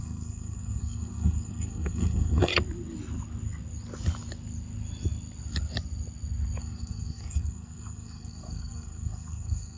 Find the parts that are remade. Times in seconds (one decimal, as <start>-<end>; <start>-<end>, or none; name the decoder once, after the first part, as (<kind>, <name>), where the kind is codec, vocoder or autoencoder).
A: 0.0-2.5 (codec, SNAC); 6.6-9.8